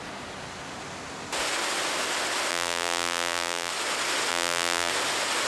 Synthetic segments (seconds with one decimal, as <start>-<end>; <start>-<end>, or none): 2.5-3.7; 4.3-4.9